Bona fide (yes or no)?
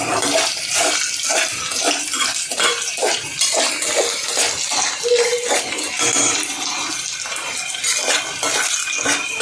yes